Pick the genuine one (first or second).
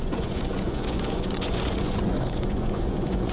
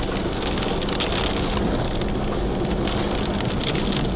second